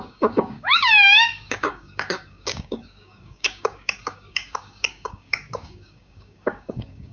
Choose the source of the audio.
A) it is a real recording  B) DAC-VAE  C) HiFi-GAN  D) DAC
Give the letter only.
D